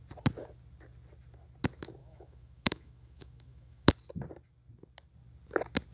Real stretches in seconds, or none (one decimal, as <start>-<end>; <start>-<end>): 0.0-2.0; 3.9-5.9